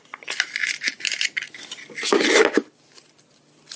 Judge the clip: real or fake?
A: real